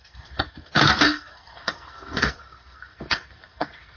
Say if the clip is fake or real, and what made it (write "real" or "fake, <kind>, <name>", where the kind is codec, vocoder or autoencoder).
fake, codec, SNAC